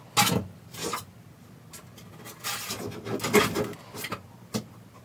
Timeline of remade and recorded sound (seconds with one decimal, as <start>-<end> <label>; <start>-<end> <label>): 0.0-5.0 recorded